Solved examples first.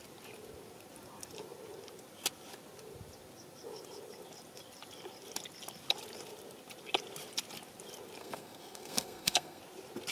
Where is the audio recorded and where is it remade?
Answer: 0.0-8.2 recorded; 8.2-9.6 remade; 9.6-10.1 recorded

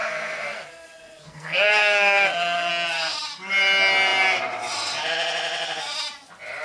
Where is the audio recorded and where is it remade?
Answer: 0.0-2.7 remade; 2.7-6.6 recorded

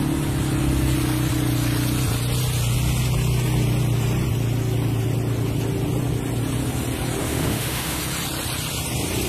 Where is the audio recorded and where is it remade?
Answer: 0.0-7.2 recorded; 7.2-8.0 remade; 8.0-9.3 recorded

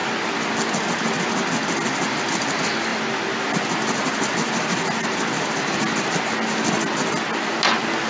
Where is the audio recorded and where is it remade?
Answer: 0.0-8.1 recorded

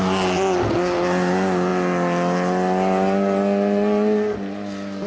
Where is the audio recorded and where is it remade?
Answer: 0.0-5.1 recorded

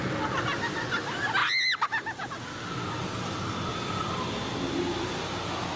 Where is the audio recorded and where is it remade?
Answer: 0.0-5.8 recorded